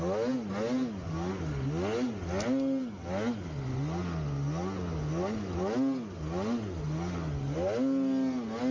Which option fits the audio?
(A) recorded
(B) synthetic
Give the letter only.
A